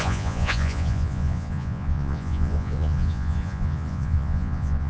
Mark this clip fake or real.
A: fake